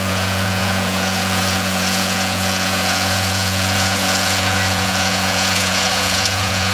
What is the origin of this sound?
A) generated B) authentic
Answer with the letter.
A